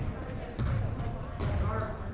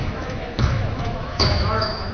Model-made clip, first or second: second